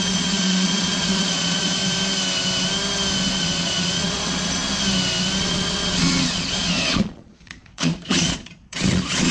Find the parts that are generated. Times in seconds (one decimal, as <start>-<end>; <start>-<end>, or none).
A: 0.0-1.8; 3.4-4.6; 5.4-9.3